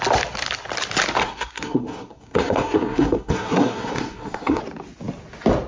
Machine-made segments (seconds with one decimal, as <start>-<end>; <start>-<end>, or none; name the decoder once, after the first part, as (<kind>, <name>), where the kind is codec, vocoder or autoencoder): 1.2-4.6 (codec, SNAC)